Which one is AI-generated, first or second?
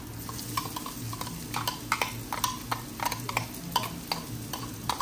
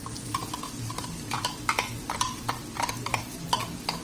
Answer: second